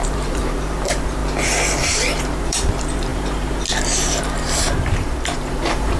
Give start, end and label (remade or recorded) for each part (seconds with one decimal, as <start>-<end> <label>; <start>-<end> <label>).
0.0-1.2 remade; 1.2-1.8 recorded; 1.8-6.0 remade